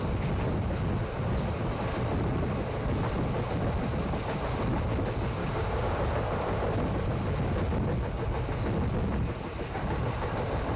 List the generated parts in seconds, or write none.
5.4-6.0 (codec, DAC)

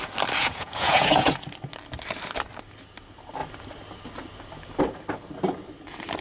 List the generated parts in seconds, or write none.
0.4-1.4 (vocoder, Vocos)

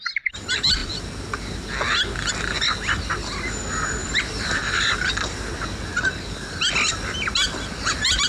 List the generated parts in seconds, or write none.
4.0-5.1 (vocoder, BigVGAN v2)

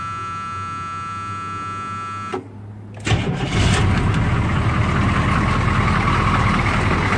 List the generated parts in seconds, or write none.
none

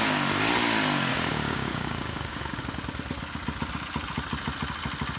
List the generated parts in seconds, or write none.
1.1-2.6 (codec, DAC)

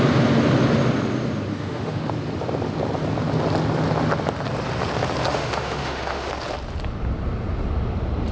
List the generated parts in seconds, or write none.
1.5-2.1 (autoencoder, DAC-VAE); 5.3-6.3